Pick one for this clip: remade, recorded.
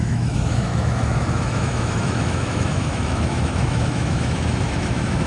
remade